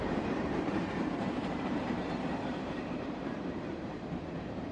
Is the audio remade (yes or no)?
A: yes